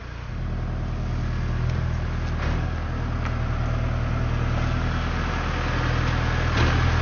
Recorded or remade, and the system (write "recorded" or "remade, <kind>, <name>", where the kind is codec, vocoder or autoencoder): recorded